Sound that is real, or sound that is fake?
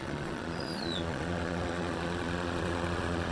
fake